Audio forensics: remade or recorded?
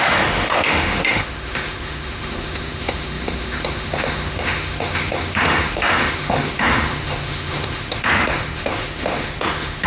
remade